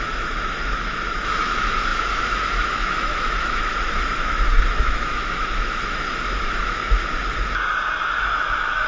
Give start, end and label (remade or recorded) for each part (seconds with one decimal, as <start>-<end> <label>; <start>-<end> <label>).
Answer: 0.0-7.0 remade; 7.0-8.2 recorded; 8.2-8.9 remade